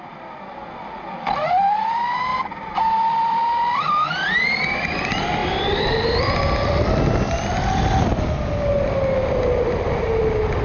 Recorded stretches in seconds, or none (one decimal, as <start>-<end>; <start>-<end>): 0.0-10.6